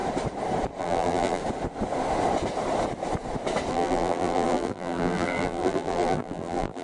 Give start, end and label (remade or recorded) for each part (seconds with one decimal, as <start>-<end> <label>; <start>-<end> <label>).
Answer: 0.0-0.8 recorded; 0.8-1.4 remade; 1.4-3.7 recorded; 3.7-6.8 remade